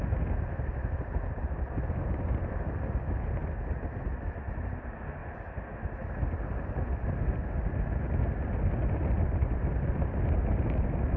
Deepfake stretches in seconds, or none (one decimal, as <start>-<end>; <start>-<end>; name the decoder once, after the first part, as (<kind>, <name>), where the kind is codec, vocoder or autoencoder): none